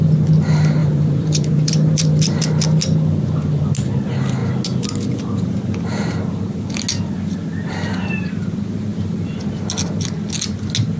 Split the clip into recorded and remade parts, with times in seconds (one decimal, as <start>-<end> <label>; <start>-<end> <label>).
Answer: 0.0-0.8 recorded; 0.8-2.4 remade; 2.4-8.9 recorded; 8.9-9.5 remade; 9.5-11.0 recorded